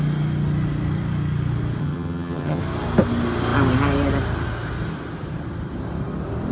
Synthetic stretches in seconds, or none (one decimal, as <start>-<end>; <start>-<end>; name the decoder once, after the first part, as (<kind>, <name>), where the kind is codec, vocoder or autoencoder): 1.8-2.6 (vocoder, HiFi-GAN)

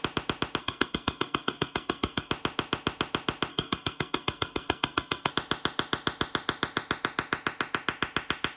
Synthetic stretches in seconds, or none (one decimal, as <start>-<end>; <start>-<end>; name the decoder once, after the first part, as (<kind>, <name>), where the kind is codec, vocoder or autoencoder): 0.6-2.3 (codec, SNAC); 3.5-5.3

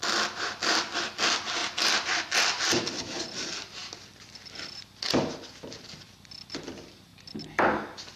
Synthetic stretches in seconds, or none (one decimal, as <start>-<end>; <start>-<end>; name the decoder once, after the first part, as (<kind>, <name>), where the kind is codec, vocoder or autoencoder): none